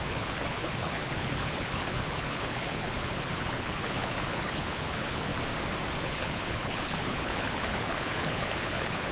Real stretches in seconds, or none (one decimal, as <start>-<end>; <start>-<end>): 5.3-6.0